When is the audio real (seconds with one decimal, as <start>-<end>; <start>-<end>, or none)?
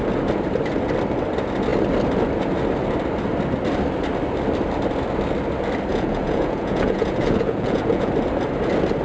0.0-5.9; 8.1-9.0